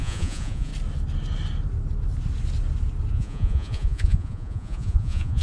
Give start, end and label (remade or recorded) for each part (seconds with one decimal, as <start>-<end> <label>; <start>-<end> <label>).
0.0-0.7 remade; 0.7-3.1 recorded; 3.1-5.4 remade